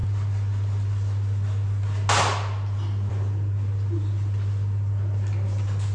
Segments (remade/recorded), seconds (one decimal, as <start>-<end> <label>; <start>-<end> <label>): 0.0-5.9 recorded